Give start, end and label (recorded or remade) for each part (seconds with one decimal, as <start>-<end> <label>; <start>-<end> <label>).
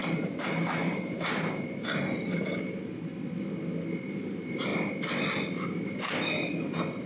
0.0-3.1 remade; 3.1-4.0 recorded; 4.0-4.7 remade; 4.7-7.1 recorded